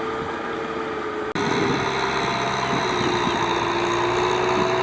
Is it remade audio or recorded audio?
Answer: recorded